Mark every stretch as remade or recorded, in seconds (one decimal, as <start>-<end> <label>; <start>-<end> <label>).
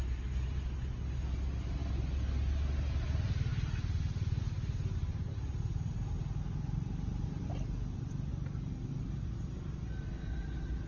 0.0-10.9 recorded